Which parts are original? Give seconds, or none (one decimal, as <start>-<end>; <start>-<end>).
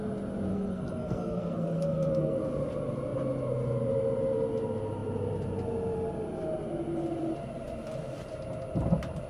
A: 0.0-0.5; 2.4-9.3